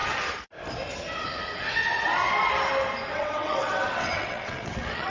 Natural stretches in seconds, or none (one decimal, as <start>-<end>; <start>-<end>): 0.0-3.1